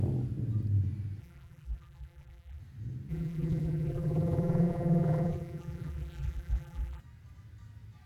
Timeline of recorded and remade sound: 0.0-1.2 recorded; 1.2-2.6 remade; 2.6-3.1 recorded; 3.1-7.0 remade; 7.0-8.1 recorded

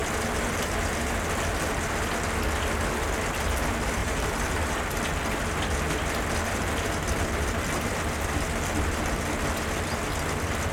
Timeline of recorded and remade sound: 0.0-4.0 recorded; 4.0-4.5 remade; 4.5-10.7 recorded